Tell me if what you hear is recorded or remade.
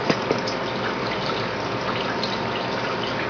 recorded